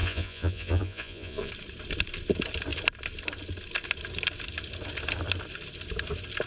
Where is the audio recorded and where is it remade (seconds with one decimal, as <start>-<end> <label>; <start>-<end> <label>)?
0.0-1.5 remade; 1.5-6.5 recorded